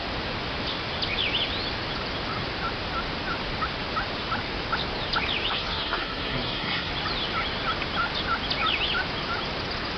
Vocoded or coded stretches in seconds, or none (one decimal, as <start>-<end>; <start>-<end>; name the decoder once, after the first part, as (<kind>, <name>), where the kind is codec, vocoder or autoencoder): 5.5-6.9 (codec, SNAC)